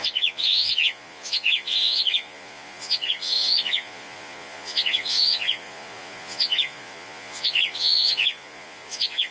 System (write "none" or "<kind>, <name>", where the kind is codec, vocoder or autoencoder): vocoder, Vocos